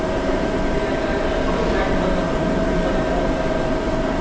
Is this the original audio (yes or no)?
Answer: no